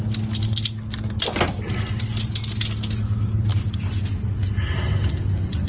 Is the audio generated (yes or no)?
no